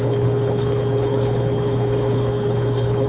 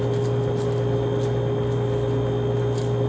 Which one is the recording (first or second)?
second